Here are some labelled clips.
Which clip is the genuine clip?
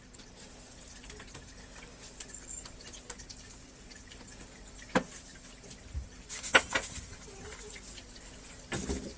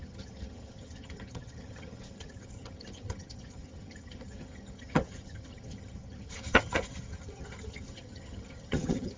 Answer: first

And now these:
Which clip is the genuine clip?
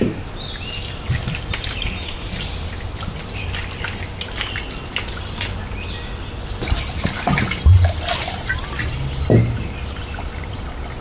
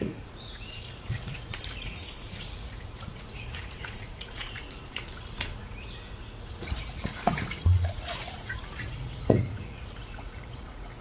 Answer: first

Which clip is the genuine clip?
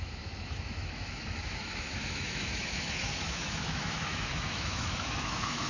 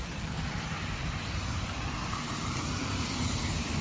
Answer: second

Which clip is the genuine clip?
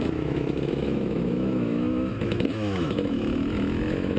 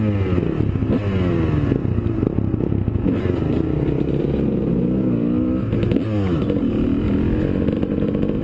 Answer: second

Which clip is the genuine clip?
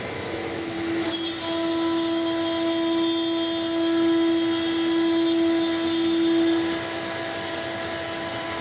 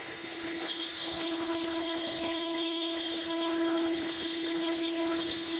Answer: first